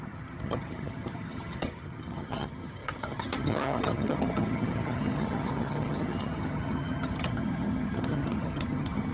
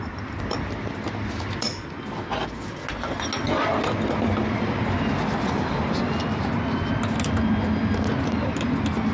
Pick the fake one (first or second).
first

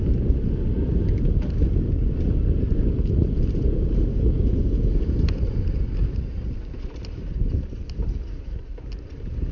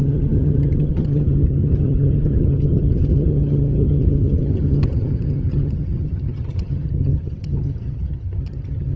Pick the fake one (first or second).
second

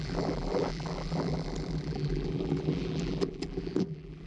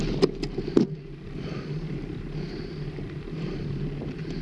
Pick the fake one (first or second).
first